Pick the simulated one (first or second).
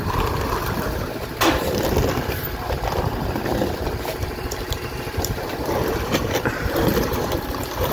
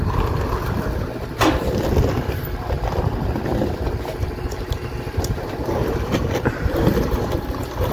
first